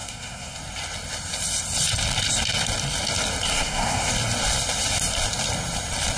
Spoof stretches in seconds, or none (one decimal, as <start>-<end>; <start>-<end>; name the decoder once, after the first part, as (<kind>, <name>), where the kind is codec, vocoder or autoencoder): 0.0-0.6 (codec, SNAC); 3.5-4.1